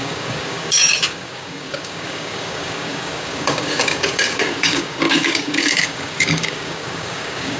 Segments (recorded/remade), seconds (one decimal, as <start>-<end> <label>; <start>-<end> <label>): 0.0-7.6 remade